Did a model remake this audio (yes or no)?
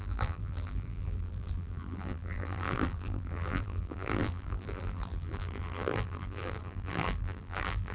yes